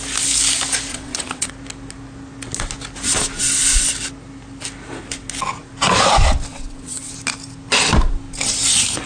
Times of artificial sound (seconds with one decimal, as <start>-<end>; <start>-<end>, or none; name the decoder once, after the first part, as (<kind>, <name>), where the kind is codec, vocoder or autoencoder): 0.9-1.5 (vocoder, WaveNeXt); 6.5-7.1